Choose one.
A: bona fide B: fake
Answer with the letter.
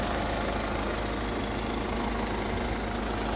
A